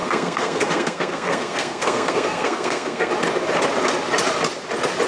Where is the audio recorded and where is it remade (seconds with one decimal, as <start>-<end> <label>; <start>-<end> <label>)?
0.0-3.1 remade; 3.1-5.1 recorded